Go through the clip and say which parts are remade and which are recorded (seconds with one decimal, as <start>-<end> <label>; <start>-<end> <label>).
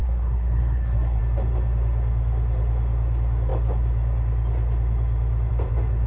0.0-1.2 remade; 1.2-6.1 recorded